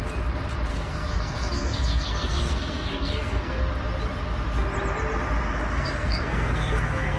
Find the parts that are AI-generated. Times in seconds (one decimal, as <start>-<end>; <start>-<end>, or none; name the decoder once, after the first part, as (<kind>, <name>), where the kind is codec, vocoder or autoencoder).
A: 0.7-3.6 (codec, SNAC); 5.7-7.2